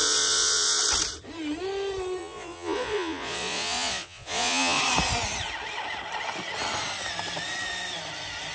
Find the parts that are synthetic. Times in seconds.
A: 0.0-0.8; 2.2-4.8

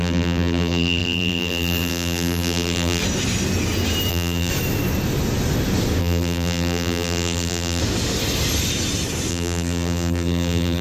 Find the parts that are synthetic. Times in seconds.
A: 0.0-3.0; 4.1-4.5; 6.0-7.8; 9.3-10.8